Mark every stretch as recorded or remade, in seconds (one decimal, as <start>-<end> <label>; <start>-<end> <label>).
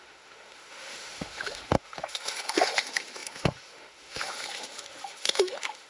0.0-5.9 remade